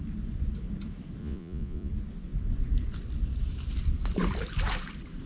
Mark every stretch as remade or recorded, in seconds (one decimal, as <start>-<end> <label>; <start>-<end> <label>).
0.0-1.2 recorded; 1.2-1.9 remade; 1.9-5.3 recorded